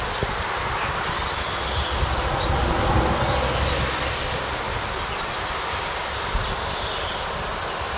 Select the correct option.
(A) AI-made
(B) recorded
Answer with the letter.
B